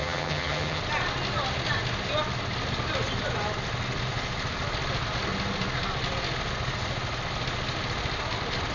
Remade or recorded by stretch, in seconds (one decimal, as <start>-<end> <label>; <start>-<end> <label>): 0.0-0.8 remade; 0.8-8.7 recorded